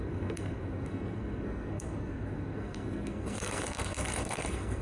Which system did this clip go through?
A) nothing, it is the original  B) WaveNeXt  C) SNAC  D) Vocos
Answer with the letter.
C